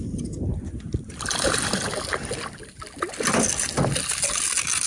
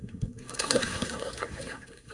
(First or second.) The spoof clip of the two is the second